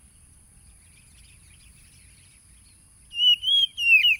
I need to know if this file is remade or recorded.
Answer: recorded